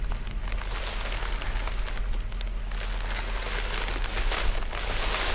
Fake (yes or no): no